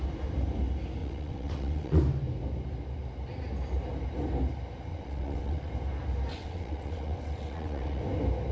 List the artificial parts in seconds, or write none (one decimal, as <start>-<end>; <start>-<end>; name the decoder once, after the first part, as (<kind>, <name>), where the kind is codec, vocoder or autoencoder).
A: 1.0-2.0 (vocoder, WaveNeXt); 4.9-5.7; 6.3-8.0